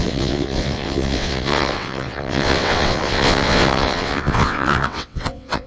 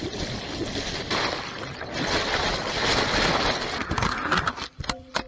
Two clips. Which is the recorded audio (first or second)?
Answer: second